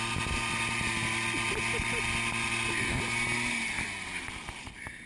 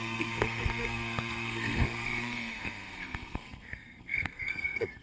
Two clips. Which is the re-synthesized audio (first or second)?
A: second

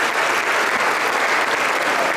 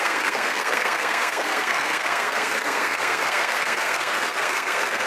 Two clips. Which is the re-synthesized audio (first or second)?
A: second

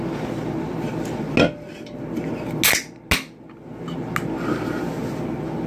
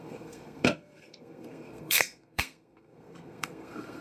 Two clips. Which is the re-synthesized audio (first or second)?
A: second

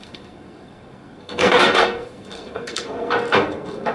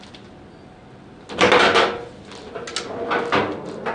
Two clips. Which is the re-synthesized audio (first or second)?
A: first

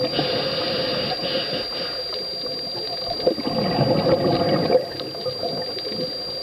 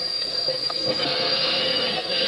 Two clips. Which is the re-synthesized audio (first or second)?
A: second